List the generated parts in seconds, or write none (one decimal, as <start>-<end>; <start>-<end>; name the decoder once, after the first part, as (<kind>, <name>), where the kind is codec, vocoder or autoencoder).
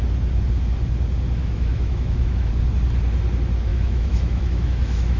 1.4-2.5 (autoencoder, DAC-VAE); 3.7-5.2